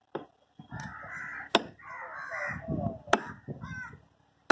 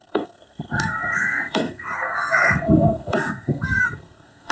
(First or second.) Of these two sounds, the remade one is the second